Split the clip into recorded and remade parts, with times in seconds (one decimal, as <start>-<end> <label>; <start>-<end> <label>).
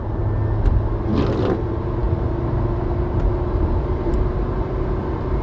0.0-5.4 recorded